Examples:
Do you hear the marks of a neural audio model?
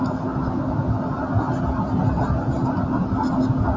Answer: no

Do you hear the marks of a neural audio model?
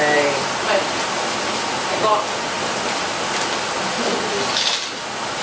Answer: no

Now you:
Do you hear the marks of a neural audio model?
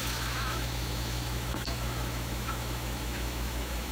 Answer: yes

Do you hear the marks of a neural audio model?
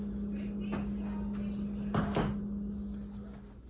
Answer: no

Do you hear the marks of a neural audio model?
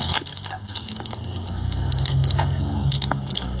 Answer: yes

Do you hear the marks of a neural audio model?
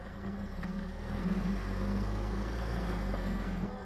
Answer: yes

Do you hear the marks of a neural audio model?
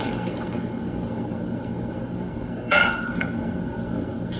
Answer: yes